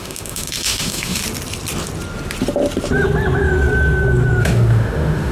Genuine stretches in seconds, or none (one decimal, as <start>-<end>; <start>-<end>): 1.2-4.4